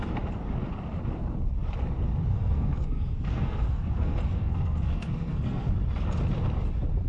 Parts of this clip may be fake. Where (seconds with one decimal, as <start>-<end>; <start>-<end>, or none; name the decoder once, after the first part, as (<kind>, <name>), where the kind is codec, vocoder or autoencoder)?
2.3-5.7 (codec, SNAC)